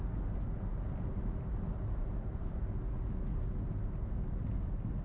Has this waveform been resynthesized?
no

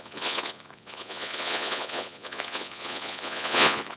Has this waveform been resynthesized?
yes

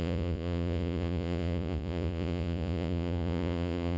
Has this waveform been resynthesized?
yes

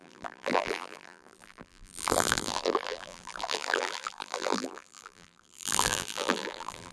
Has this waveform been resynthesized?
yes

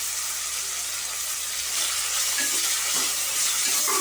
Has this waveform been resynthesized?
no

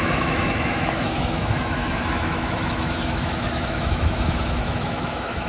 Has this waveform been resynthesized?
yes